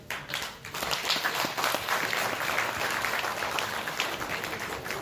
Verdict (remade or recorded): recorded